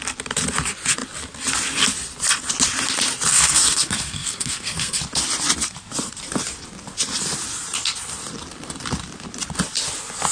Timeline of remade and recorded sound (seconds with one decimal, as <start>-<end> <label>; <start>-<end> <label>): 0.0-3.3 recorded; 3.3-5.0 remade; 5.0-10.3 recorded

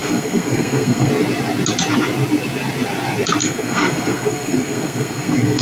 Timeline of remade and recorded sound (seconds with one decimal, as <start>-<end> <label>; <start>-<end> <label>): 0.0-1.1 remade; 1.1-3.4 recorded; 3.4-5.6 remade

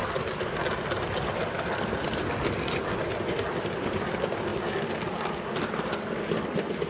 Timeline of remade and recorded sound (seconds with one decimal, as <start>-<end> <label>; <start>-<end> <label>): 0.0-6.9 recorded

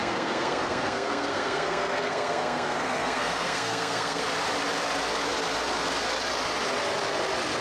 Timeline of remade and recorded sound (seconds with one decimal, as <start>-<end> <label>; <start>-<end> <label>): 0.0-4.2 remade; 4.2-7.6 recorded

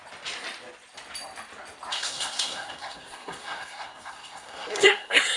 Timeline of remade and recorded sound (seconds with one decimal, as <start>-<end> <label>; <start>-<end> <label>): 0.0-1.9 recorded; 1.9-5.4 remade

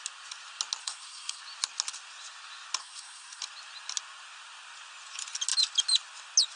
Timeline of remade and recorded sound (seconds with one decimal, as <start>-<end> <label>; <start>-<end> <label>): 0.0-0.8 recorded; 0.8-1.4 remade; 1.4-2.8 recorded; 2.8-3.4 remade; 3.4-6.6 recorded

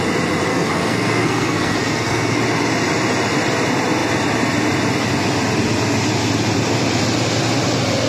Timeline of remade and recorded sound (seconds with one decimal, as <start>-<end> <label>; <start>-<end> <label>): 0.0-0.5 recorded; 0.5-2.4 remade; 2.4-8.1 recorded